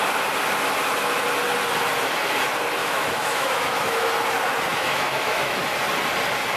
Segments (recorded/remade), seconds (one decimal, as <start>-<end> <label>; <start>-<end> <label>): 0.0-2.8 recorded; 2.8-4.1 remade; 4.1-4.7 recorded; 4.7-5.6 remade; 5.6-6.6 recorded